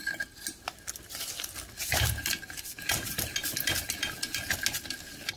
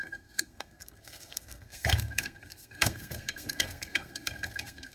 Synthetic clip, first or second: second